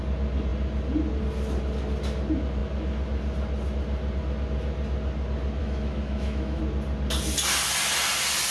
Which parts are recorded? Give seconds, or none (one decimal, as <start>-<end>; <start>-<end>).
0.0-5.6; 6.6-8.5